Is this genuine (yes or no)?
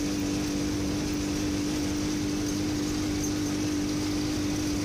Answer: yes